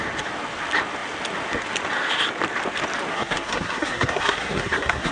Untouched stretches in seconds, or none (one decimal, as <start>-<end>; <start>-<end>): 0.0-3.1